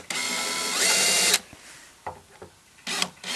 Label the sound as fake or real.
real